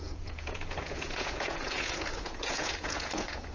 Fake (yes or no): yes